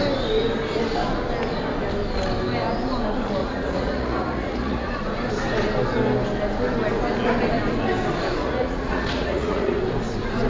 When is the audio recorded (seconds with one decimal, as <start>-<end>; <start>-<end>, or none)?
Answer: 0.0-3.4; 5.0-8.4; 9.8-10.5